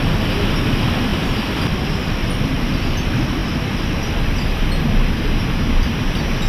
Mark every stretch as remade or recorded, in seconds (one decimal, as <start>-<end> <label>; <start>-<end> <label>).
0.0-1.1 recorded; 1.1-2.5 remade; 2.5-6.5 recorded